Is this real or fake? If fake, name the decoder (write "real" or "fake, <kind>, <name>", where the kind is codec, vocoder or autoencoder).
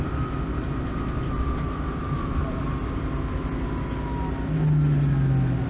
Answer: real